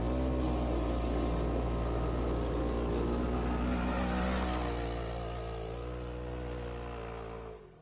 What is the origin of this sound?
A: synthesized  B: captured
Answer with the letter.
B